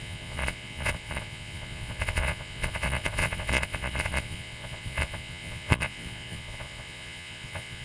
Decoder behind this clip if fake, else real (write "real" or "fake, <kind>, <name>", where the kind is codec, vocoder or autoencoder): fake, vocoder, Vocos